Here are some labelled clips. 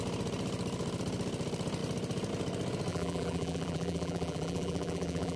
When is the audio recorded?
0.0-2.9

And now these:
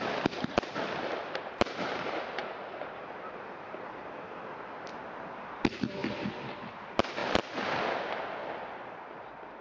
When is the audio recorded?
2.4-5.3; 6.0-6.7; 7.2-8.1